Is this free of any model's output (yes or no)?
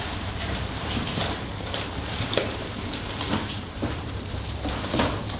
no